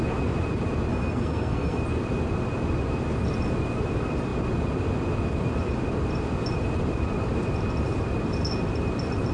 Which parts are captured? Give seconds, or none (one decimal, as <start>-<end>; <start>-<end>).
0.0-0.9; 1.8-9.3